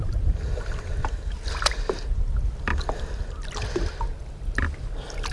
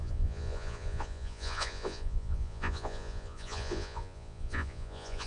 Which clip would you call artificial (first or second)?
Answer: second